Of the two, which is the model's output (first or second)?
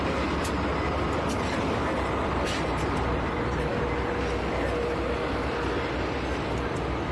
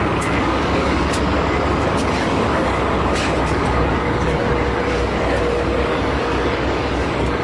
second